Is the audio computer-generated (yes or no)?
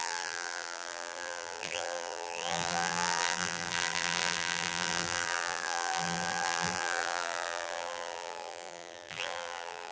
yes